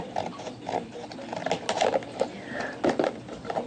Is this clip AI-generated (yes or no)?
no